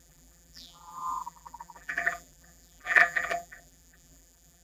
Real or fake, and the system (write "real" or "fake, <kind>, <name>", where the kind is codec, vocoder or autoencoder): fake, vocoder, BigVGAN v2